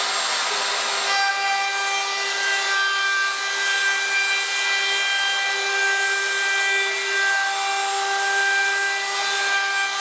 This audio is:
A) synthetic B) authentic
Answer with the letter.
B